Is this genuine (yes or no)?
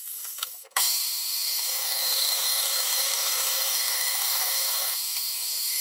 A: no